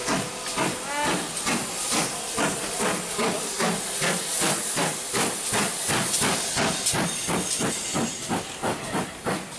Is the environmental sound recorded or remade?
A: recorded